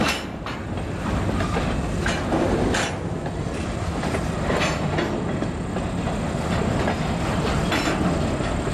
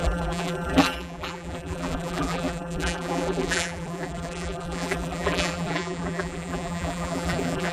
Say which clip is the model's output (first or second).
second